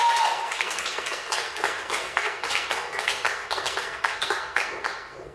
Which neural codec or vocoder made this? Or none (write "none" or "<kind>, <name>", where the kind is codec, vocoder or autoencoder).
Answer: codec, SNAC